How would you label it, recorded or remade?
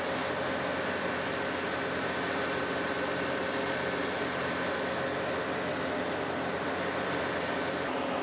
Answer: recorded